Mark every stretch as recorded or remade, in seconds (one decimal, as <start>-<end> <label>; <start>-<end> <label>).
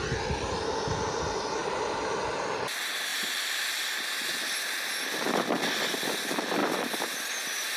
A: 0.0-7.8 recorded